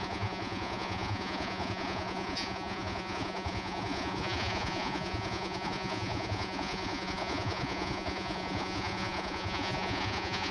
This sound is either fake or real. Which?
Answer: fake